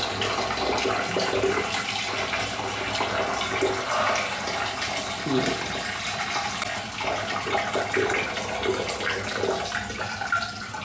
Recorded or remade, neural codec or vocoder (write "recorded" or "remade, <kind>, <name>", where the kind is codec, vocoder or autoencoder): recorded